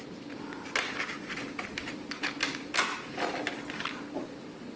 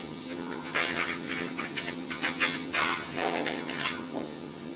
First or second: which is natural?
first